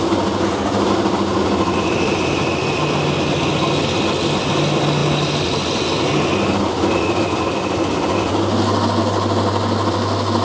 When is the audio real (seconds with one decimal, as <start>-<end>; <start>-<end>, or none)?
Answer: 0.0-10.4